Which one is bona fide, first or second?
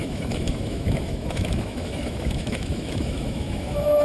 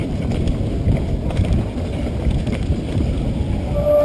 second